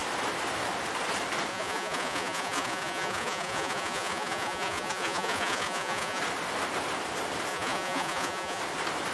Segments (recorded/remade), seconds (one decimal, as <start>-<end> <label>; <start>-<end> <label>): 0.0-1.5 recorded; 1.5-6.2 remade; 6.2-7.5 recorded; 7.5-8.6 remade; 8.6-9.1 recorded